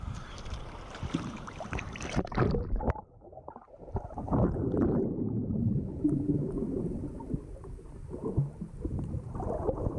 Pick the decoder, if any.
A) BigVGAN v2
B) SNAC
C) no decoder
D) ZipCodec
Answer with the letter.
A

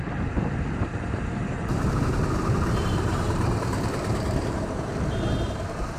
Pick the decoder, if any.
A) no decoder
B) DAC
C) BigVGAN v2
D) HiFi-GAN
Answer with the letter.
C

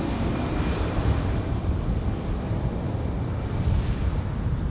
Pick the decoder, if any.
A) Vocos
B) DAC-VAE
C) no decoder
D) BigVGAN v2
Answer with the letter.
D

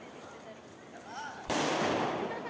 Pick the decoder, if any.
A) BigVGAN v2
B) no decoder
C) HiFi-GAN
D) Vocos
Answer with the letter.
A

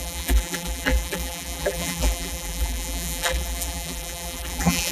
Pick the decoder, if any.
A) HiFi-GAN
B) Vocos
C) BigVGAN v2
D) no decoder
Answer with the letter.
C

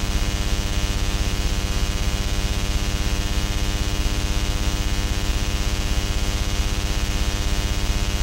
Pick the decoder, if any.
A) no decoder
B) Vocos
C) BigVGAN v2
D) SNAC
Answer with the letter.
A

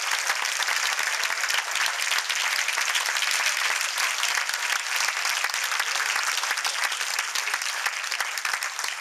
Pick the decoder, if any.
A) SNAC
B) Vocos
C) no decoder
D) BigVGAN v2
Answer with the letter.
C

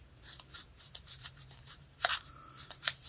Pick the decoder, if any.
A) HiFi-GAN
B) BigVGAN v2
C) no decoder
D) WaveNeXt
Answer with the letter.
B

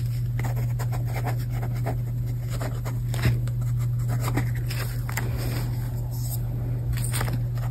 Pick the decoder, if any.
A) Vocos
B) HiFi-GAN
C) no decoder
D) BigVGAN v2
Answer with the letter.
C